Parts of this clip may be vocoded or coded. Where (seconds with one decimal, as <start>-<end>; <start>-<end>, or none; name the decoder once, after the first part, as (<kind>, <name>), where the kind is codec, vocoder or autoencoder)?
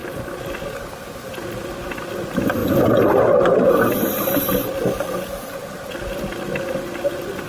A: none